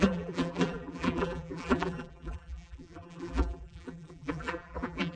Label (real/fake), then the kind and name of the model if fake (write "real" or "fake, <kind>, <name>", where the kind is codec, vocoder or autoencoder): fake, vocoder, BigVGAN v2